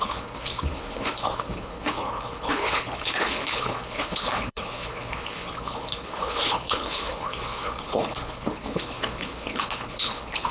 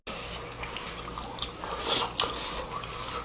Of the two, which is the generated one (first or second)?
first